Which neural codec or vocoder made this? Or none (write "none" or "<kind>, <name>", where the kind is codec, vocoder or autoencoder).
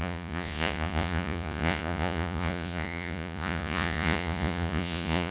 vocoder, Vocos